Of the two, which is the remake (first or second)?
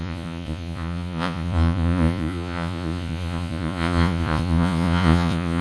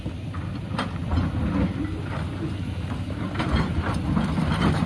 first